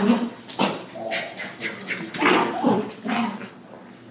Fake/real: real